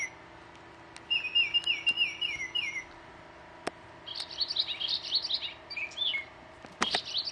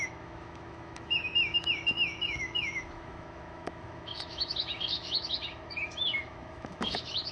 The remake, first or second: second